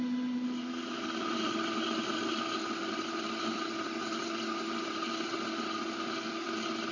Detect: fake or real real